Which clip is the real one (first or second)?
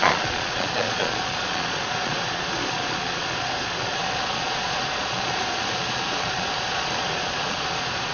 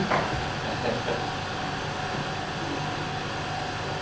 second